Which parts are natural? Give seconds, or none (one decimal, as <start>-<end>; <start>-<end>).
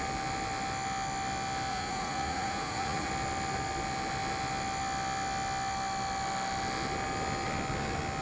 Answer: 0.0-1.7; 3.1-8.2